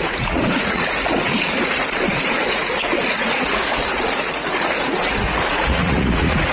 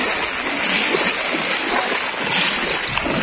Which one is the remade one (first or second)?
first